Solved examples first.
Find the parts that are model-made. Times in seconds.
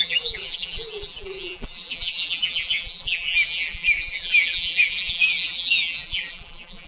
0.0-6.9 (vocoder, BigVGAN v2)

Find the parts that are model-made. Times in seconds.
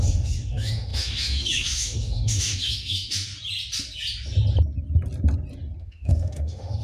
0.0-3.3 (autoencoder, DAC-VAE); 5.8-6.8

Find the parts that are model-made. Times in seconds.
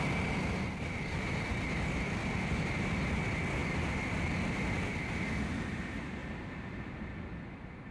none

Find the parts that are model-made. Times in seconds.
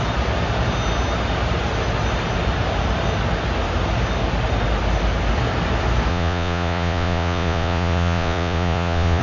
6.1-9.2 (vocoder, Vocos)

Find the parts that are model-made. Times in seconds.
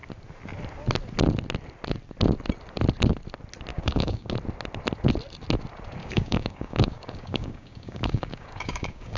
3.7-4.3 (codec, DAC); 6.0-9.2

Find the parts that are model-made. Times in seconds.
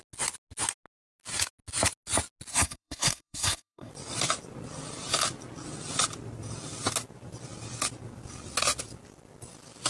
2.5-3.9 (codec, SNAC)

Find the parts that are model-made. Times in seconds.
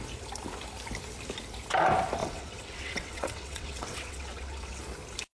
2.2-4.8 (vocoder, WaveNeXt)